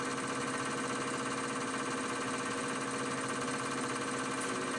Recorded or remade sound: recorded